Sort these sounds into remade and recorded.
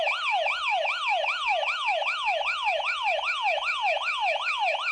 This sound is recorded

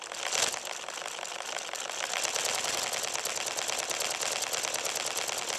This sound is recorded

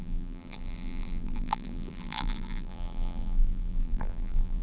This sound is remade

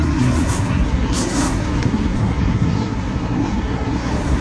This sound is remade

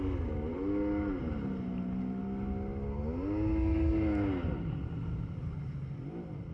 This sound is recorded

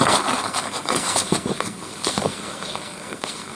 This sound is remade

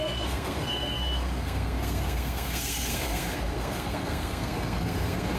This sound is remade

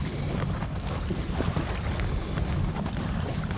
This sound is recorded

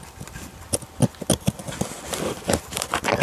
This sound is recorded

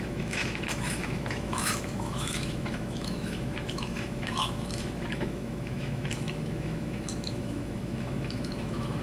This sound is remade